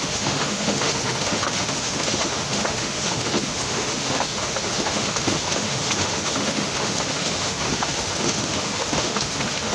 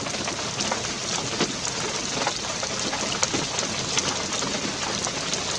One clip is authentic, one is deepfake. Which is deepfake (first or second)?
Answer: first